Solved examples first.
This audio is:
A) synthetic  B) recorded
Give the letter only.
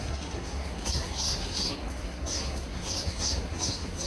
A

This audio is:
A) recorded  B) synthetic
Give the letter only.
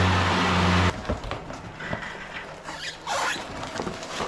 A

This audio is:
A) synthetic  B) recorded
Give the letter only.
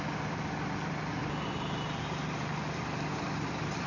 B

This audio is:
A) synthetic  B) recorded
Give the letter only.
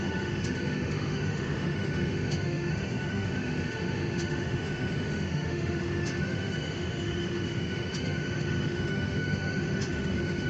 A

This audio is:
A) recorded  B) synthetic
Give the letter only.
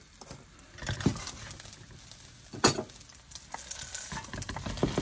A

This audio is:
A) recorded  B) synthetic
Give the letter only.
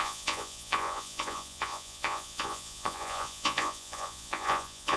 B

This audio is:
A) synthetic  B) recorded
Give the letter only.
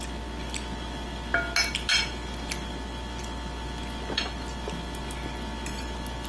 B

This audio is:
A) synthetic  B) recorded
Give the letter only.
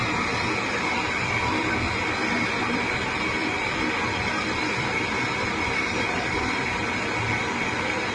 B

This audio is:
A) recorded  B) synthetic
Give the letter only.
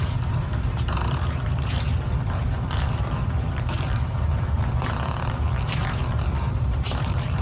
B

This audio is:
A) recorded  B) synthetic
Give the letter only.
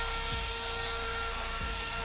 B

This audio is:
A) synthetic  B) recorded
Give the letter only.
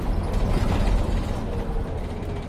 B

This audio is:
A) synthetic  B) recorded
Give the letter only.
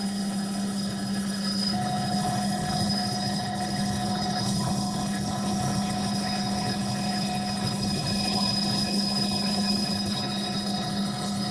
A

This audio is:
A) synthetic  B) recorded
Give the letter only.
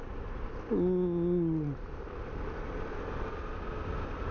B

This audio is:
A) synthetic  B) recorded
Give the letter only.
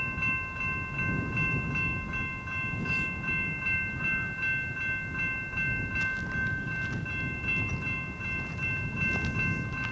B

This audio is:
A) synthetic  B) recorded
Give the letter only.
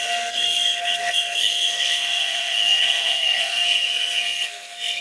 A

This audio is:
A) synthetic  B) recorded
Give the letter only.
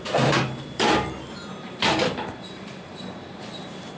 A